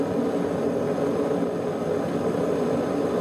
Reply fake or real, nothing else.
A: real